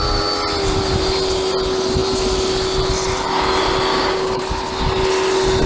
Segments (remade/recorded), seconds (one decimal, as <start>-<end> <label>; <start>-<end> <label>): 0.0-3.9 recorded; 3.9-4.4 remade; 4.4-5.7 recorded